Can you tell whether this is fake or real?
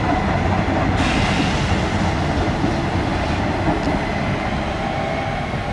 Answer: real